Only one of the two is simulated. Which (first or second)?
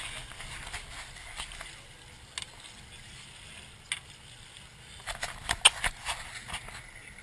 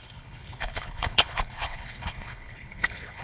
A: second